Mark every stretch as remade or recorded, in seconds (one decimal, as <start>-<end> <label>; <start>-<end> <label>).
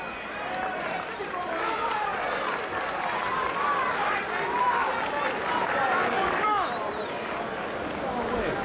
0.0-8.6 recorded